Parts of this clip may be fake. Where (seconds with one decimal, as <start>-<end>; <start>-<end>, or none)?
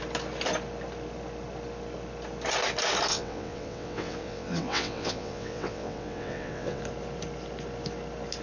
3.1-6.8